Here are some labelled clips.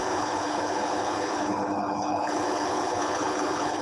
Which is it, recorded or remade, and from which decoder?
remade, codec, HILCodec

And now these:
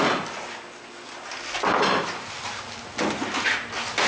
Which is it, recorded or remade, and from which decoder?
recorded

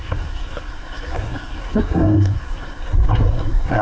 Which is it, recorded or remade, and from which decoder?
remade, codec, SNAC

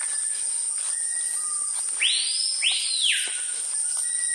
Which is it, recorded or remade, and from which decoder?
recorded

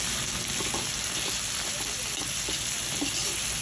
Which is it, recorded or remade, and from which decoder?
recorded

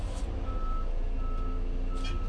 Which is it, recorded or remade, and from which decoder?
recorded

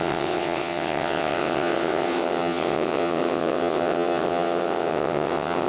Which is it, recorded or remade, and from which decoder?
remade, vocoder, WaveNeXt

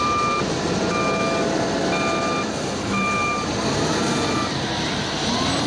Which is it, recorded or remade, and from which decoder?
recorded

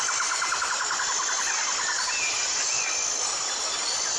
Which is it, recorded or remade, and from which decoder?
recorded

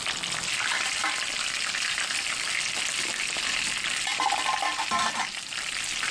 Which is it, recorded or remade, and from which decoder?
remade, vocoder, BigVGAN v2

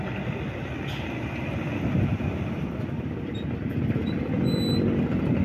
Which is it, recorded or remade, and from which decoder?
recorded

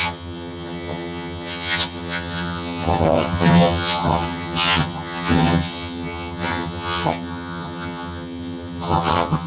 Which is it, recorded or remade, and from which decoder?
remade, vocoder, HiFi-GAN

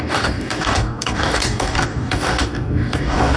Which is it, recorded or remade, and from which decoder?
remade, codec, DAC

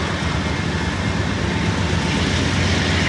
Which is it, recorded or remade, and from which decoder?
recorded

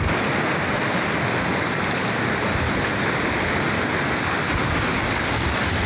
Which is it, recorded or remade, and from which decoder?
recorded